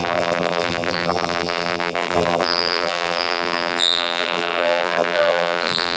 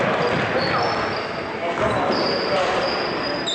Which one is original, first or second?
second